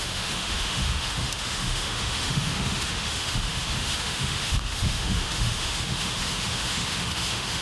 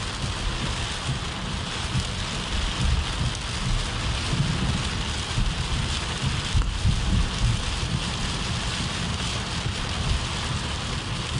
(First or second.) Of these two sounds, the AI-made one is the first